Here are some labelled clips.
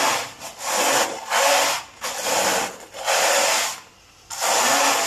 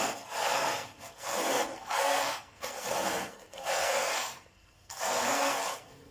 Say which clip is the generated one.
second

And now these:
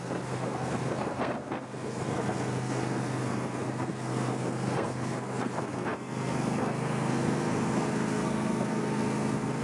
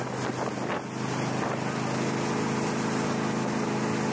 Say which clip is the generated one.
first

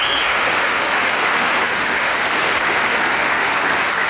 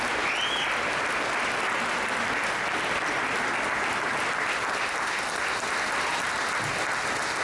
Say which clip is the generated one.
first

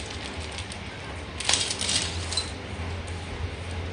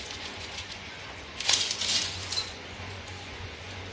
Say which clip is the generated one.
second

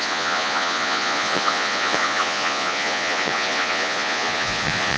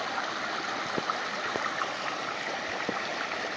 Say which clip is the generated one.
first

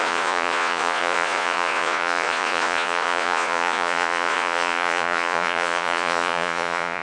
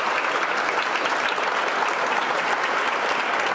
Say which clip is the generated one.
first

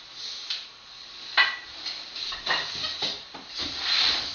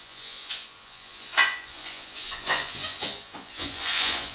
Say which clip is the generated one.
second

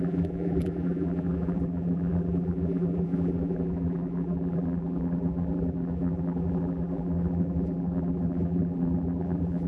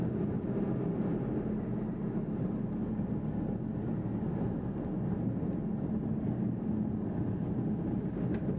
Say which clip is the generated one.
first